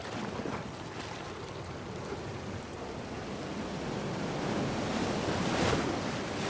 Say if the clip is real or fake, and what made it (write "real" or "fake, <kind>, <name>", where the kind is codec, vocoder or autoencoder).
real